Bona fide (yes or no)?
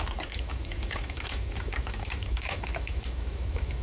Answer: no